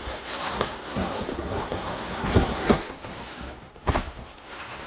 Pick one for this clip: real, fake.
fake